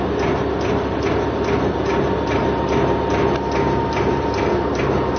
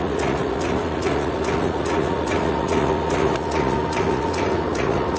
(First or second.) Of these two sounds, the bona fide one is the first